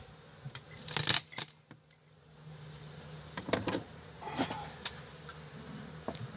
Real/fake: real